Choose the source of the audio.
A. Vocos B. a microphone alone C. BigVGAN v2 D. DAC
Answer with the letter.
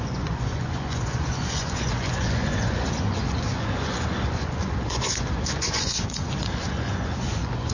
A